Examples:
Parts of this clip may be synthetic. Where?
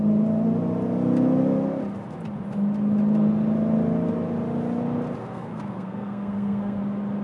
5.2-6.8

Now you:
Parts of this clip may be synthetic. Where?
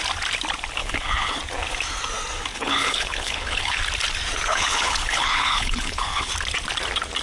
0.8-1.4; 2.5-3.8; 4.5-6.3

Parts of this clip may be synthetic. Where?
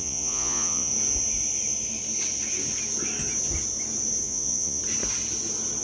0.0-0.9; 4.2-4.8